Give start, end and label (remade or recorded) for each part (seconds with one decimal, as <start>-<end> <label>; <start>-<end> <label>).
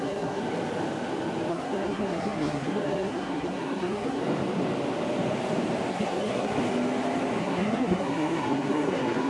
0.0-0.4 remade; 0.4-1.5 recorded; 1.5-4.2 remade; 4.2-5.9 recorded; 5.9-6.6 remade; 6.6-7.4 recorded; 7.4-9.3 remade